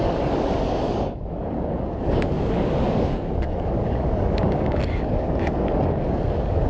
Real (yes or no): no